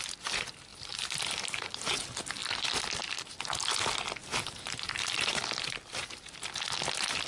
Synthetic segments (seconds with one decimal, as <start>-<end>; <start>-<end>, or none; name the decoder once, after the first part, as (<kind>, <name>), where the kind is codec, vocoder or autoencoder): 0.7-1.7 (vocoder, BigVGAN v2); 4.2-5.4